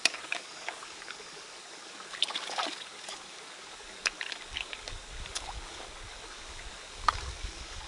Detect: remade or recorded remade